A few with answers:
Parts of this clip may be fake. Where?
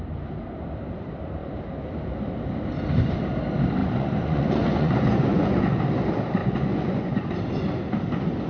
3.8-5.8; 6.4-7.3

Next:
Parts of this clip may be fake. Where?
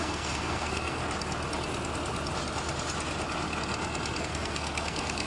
0.0-1.0; 4.2-5.3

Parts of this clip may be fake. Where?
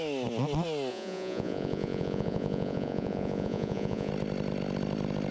0.9-4.1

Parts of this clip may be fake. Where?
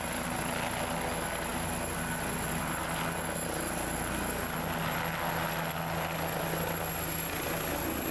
none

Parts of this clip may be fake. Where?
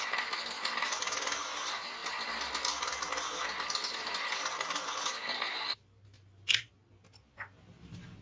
none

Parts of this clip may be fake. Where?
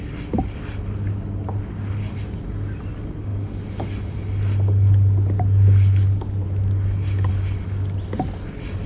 none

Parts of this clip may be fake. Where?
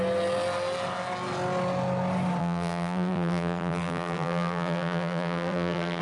2.4-6.0